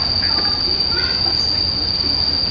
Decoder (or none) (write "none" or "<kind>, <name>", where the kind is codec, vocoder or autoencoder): none